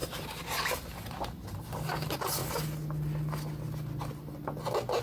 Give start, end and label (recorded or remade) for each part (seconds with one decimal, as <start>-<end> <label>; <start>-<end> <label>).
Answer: 0.0-5.0 recorded